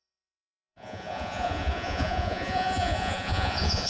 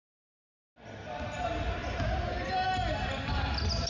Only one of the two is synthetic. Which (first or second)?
first